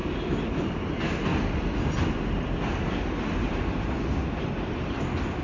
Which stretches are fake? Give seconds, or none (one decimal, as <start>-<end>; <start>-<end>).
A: none

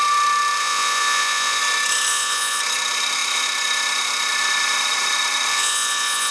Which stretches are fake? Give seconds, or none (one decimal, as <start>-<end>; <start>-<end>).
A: 0.6-1.6; 2.1-2.6; 5.5-6.3